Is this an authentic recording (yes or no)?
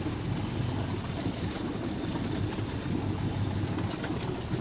yes